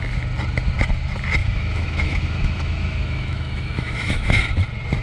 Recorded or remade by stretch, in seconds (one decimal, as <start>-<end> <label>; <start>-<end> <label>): 0.0-1.4 recorded; 1.4-4.4 remade; 4.4-5.0 recorded